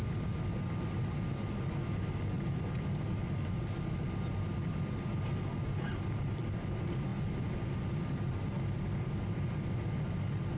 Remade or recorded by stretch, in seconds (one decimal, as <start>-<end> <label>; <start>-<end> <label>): 0.0-10.6 recorded